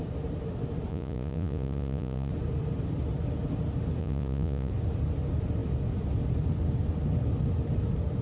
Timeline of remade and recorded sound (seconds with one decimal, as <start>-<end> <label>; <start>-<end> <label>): 0.0-0.9 recorded; 0.9-2.3 remade; 2.3-4.0 recorded; 4.0-4.7 remade; 4.7-8.2 recorded